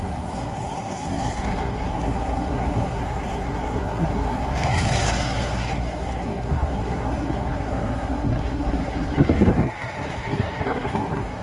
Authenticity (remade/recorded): remade